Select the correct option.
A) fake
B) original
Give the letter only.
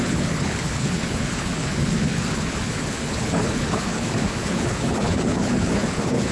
A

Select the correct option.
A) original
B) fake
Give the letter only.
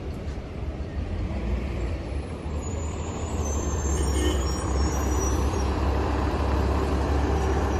B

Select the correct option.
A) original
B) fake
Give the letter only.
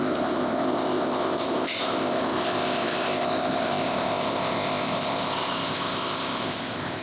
B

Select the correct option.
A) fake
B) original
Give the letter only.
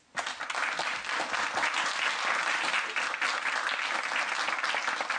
B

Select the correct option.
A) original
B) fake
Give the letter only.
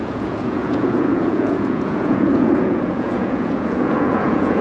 B